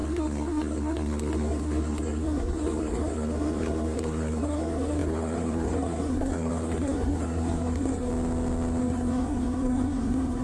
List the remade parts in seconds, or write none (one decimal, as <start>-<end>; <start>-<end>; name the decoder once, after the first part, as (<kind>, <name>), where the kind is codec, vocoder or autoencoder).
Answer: 0.0-8.1 (codec, SNAC); 8.8-10.4